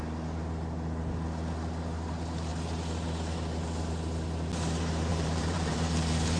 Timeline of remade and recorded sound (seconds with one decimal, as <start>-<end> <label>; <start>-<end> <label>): 0.0-5.1 recorded; 5.1-6.4 remade